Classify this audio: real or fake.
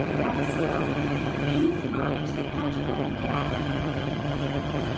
fake